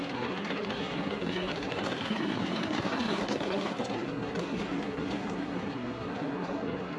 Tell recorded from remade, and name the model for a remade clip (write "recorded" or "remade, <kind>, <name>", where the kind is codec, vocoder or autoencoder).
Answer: remade, codec, SNAC